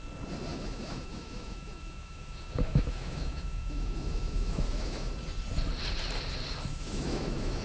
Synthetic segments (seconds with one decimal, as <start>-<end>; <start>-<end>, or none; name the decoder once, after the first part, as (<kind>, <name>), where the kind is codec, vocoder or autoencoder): 0.5-5.1 (autoencoder, DAC-VAE); 6.7-7.6